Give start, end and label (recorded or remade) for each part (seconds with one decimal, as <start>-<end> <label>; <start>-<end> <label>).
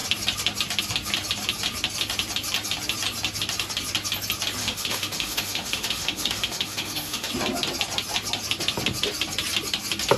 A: 0.0-4.6 recorded; 4.6-7.3 remade; 7.3-10.2 recorded